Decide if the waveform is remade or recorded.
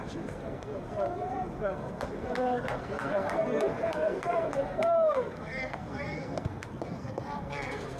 remade